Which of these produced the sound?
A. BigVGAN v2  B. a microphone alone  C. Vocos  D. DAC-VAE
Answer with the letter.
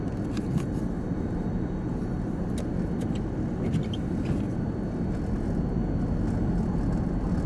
B